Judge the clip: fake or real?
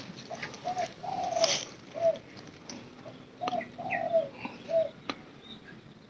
real